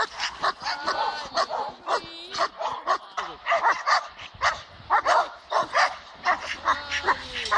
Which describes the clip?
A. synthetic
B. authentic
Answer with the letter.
B